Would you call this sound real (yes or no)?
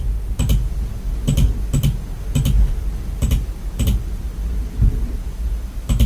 yes